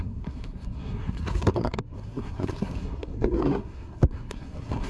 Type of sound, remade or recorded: remade